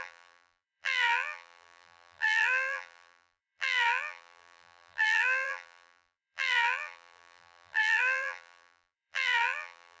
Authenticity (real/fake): fake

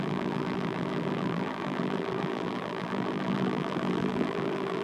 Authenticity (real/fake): fake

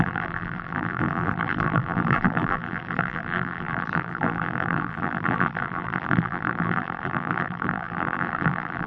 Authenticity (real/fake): fake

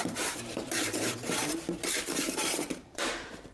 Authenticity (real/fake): fake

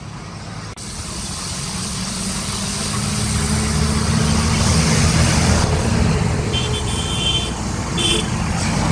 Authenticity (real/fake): fake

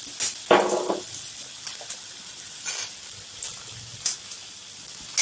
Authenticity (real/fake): real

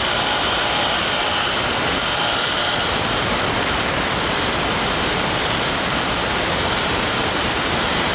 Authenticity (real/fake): fake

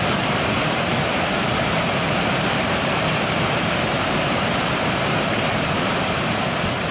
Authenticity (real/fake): fake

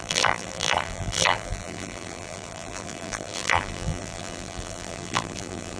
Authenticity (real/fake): fake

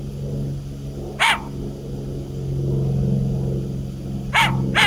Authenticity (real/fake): real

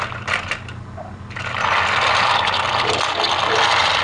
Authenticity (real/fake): real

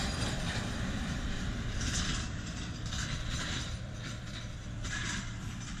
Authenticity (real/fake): fake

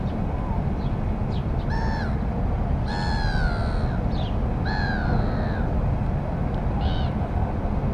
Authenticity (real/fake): real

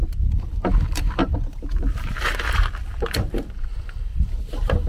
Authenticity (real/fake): fake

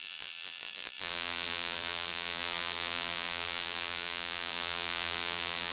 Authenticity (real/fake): fake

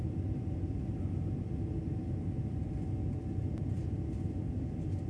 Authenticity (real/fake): real